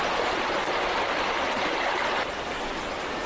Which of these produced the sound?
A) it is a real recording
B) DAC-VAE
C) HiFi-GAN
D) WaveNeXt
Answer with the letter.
A